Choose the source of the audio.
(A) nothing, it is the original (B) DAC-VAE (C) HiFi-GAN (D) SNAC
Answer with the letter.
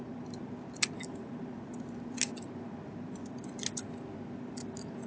A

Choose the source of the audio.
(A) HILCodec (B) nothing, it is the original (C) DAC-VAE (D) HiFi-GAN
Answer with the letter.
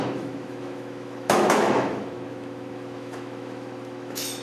C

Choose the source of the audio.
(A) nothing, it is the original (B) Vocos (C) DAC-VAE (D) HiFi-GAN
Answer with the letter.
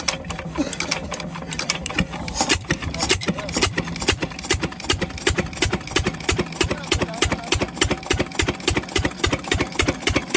A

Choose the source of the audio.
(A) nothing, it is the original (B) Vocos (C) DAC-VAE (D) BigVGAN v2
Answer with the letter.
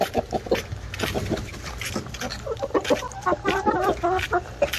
A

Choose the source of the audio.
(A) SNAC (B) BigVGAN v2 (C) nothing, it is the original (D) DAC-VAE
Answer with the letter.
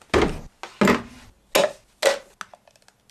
C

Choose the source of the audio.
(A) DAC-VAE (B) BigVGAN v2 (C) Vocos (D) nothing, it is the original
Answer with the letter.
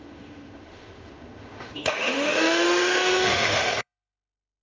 A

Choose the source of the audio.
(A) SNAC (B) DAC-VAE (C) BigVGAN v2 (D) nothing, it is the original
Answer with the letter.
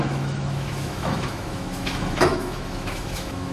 B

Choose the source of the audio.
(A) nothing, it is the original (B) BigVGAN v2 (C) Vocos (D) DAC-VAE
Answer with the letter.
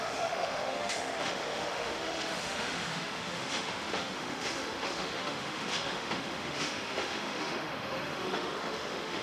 D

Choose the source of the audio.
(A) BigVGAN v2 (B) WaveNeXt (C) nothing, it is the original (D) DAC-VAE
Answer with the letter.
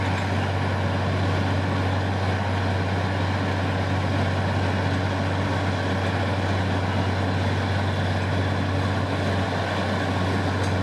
C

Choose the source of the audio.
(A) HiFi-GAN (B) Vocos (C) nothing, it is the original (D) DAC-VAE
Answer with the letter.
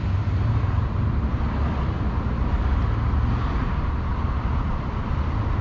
C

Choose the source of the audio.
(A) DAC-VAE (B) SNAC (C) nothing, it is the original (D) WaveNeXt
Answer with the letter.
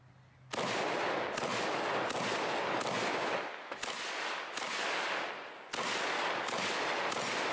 C